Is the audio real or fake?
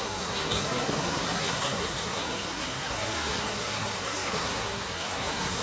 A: fake